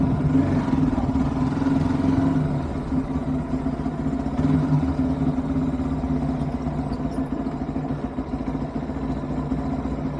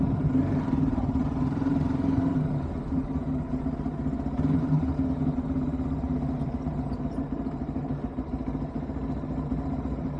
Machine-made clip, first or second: second